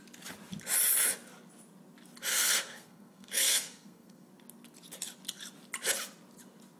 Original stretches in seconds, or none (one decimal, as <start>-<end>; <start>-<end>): 0.0-2.3; 4.3-6.8